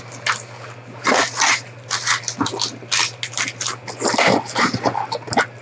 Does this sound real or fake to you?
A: real